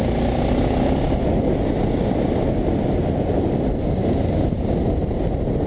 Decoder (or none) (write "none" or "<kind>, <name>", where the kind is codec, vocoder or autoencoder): none